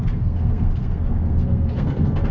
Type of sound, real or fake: fake